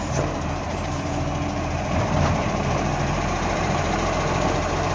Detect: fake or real fake